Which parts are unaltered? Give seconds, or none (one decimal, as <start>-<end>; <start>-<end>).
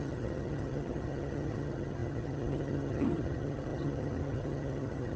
none